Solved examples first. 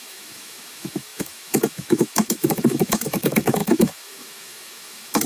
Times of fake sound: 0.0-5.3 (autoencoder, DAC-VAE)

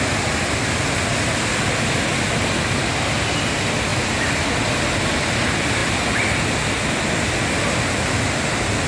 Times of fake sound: none

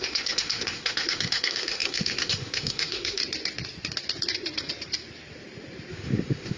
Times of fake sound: 0.0-3.2 (autoencoder, DAC-VAE); 5.9-6.6

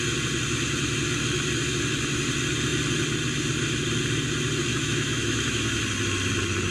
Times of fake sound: 4.7-5.8 (autoencoder, DAC-VAE)

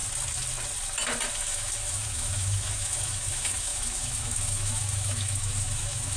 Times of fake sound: 1.3-6.2 (autoencoder, DAC-VAE)